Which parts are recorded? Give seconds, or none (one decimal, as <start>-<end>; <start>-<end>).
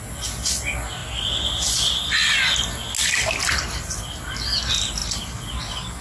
0.0-6.0